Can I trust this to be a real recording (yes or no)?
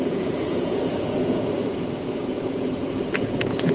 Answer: no